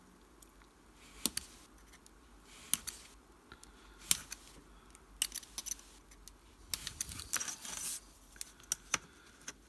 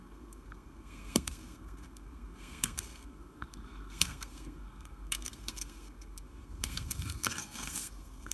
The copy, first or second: second